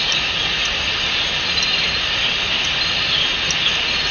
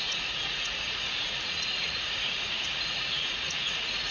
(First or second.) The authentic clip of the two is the first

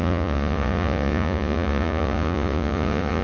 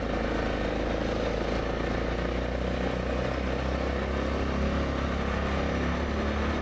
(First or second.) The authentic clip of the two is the second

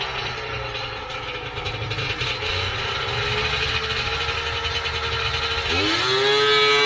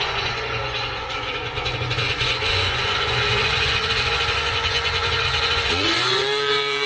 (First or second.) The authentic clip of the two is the first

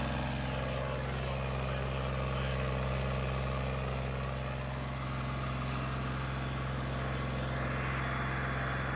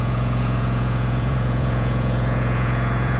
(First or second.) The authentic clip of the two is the first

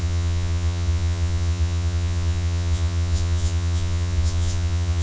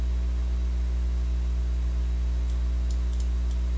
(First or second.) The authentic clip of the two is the second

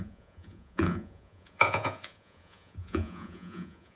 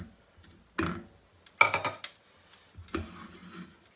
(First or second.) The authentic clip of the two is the second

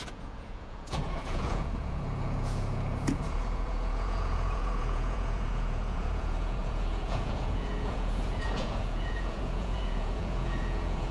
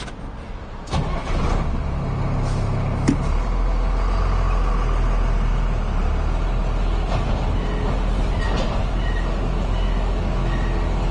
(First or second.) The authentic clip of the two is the second